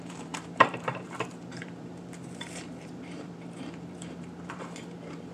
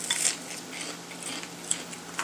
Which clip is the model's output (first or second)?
first